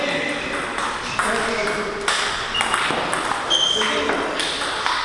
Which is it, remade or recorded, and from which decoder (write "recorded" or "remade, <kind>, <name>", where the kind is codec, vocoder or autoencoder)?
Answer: recorded